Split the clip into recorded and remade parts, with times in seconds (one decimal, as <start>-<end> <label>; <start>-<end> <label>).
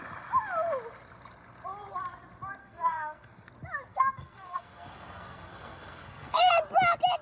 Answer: 0.0-2.6 recorded; 2.6-3.5 remade; 3.5-3.9 recorded; 3.9-6.5 remade; 6.5-7.2 recorded